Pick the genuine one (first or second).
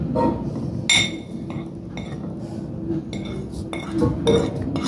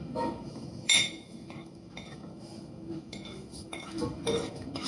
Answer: first